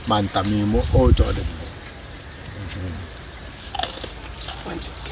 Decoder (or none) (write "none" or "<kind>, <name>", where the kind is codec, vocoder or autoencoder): none